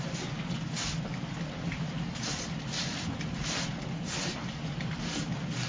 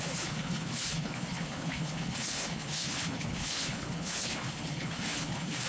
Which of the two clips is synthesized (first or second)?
second